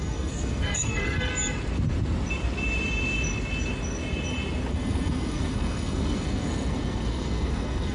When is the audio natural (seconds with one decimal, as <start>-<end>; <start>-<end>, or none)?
1.3-4.7